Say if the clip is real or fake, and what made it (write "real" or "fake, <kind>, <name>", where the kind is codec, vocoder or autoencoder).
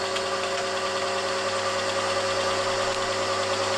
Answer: real